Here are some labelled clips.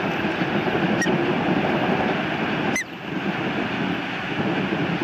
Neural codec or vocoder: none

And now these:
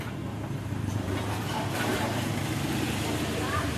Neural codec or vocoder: vocoder, BigVGAN v2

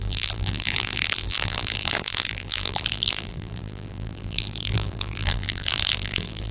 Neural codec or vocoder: vocoder, BigVGAN v2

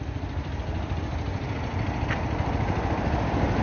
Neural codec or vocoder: vocoder, BigVGAN v2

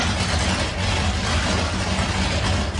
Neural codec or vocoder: none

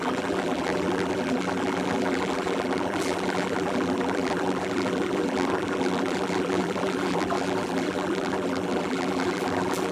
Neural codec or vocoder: vocoder, BigVGAN v2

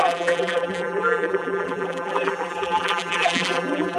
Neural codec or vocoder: vocoder, BigVGAN v2